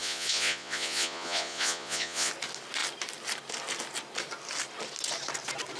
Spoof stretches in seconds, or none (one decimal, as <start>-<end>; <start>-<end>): 0.0-2.3